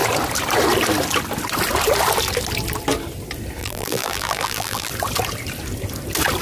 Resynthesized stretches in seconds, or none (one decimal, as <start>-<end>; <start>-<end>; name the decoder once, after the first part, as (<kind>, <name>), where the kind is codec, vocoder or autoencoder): 3.6-4.9 (vocoder, BigVGAN v2)